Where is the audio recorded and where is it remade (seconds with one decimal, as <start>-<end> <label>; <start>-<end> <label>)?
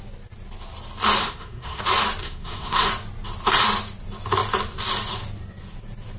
0.0-1.2 recorded; 1.2-1.8 remade; 1.8-2.2 recorded; 2.2-2.9 remade; 2.9-6.2 recorded